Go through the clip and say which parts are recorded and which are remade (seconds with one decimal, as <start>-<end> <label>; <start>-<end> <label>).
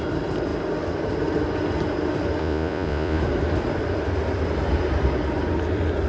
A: 0.0-2.4 recorded; 2.4-3.2 remade; 3.2-6.1 recorded